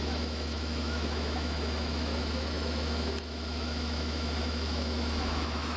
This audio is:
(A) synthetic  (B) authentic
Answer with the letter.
A